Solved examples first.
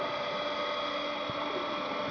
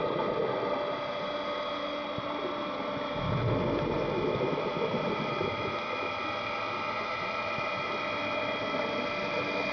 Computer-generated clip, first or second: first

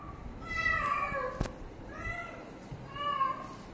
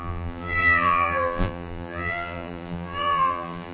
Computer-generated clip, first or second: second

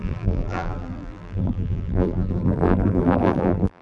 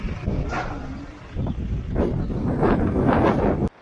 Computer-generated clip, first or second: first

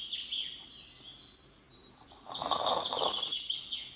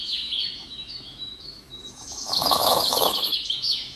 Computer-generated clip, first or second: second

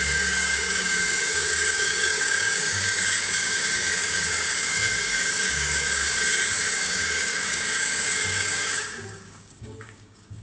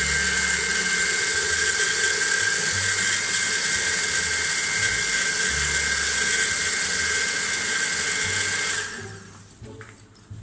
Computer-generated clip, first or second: first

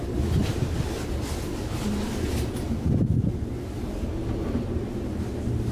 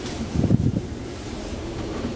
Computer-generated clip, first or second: second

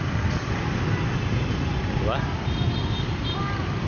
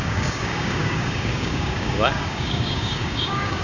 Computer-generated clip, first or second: second